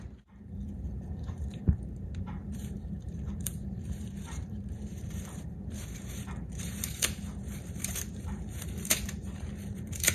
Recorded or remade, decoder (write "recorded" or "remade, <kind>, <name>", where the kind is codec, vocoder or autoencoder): remade, vocoder, BigVGAN v2